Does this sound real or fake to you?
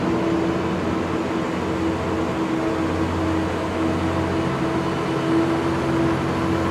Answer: real